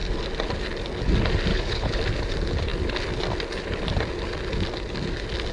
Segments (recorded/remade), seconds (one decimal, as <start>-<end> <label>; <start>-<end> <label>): 0.0-1.5 recorded; 1.5-2.0 remade; 2.0-5.5 recorded